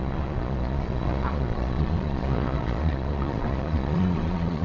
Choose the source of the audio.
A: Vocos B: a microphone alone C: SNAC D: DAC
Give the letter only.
A